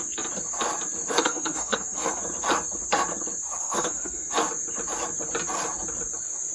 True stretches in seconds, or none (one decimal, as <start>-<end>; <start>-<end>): 0.0-1.1; 2.2-3.6; 4.3-6.5